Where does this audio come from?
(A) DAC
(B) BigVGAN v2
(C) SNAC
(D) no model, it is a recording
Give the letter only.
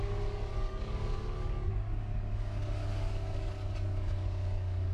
A